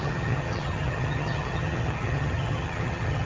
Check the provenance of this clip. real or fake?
fake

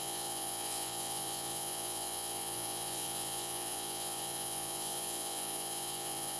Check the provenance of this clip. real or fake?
fake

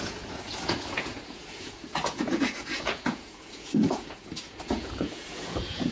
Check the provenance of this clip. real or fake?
fake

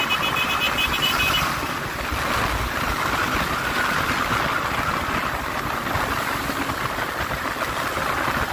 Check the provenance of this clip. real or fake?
real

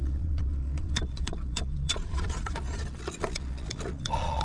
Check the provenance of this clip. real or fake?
fake